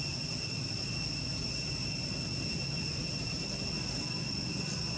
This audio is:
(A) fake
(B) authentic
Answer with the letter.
B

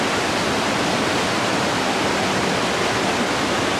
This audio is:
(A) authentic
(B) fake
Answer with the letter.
A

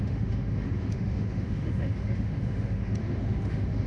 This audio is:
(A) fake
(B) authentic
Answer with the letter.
A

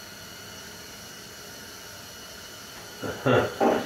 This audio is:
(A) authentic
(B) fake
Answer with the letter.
A